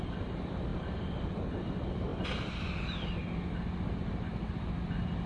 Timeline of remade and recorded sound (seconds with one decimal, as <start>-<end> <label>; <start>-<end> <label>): 0.0-5.3 recorded

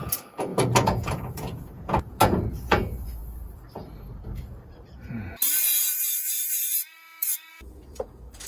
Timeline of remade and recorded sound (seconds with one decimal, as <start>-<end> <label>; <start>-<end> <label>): 0.0-3.2 remade; 3.2-5.1 recorded; 5.1-8.5 remade

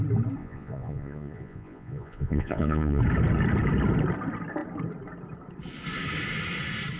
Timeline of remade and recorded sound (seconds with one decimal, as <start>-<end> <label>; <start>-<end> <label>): 0.0-0.4 recorded; 0.4-3.0 remade; 3.0-7.0 recorded

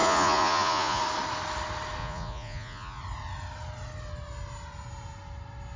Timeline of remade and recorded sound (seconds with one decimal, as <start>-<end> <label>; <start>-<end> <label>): 0.0-1.0 remade; 1.0-2.0 recorded; 2.0-3.0 remade; 3.0-5.8 recorded

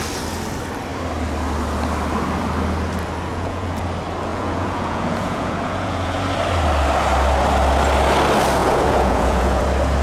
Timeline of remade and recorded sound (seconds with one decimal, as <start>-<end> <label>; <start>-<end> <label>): 0.0-3.3 recorded; 3.3-3.8 remade; 3.8-4.3 recorded; 4.3-6.2 remade; 6.2-8.6 recorded; 8.6-9.6 remade; 9.6-10.0 recorded

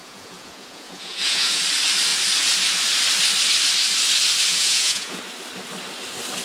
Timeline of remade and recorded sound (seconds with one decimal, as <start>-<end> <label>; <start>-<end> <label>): 0.0-1.6 remade; 1.6-4.5 recorded; 4.5-5.2 remade; 5.2-6.4 recorded